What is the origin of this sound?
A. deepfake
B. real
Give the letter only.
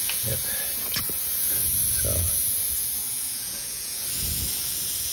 A